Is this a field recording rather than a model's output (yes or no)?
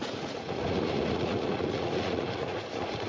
no